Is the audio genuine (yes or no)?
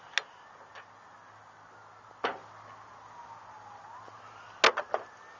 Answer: yes